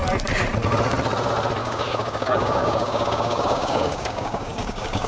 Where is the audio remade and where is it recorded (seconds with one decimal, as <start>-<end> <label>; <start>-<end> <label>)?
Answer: 0.0-1.6 recorded; 1.6-5.1 remade